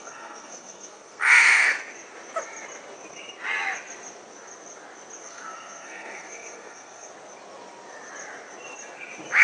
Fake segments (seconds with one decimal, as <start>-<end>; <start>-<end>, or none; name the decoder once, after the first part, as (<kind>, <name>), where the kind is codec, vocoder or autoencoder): 0.0-1.7 (codec, SNAC); 5.2-7.1